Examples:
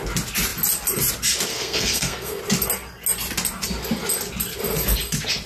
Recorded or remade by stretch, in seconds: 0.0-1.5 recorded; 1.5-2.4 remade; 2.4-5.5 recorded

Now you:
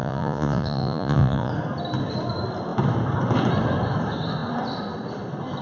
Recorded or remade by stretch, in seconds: 0.0-1.5 remade; 1.5-5.6 recorded